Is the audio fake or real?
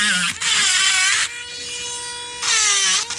real